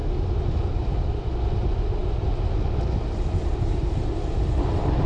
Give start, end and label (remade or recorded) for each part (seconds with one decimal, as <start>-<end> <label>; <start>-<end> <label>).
0.0-2.0 remade; 2.0-3.5 recorded; 3.5-5.1 remade

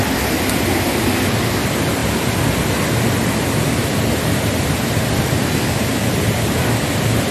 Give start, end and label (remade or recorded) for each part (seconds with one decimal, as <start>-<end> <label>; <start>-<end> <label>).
0.0-7.3 recorded

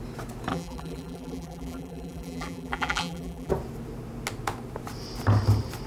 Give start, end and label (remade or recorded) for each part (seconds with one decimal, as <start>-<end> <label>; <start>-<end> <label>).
0.0-0.5 recorded; 0.5-3.5 remade; 3.5-5.9 recorded

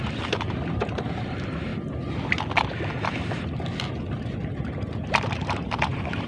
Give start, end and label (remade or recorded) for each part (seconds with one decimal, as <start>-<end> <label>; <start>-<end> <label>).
0.0-1.7 remade; 1.7-5.1 recorded; 5.1-6.3 remade

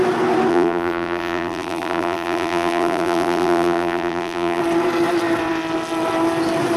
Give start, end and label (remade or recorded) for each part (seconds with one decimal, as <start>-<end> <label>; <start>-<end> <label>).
0.0-0.5 recorded; 0.5-4.6 remade; 4.6-6.8 recorded

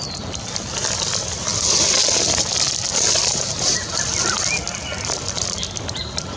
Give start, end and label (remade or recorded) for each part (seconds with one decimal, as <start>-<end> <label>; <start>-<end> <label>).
0.0-6.4 recorded